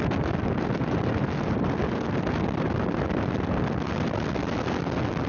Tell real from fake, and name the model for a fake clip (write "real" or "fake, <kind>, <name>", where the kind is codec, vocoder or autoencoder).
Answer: real